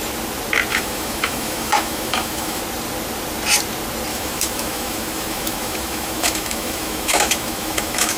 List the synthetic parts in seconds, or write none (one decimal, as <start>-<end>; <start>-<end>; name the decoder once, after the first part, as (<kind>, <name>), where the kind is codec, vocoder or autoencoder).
0.7-2.6 (autoencoder, DAC-VAE); 4.1-8.2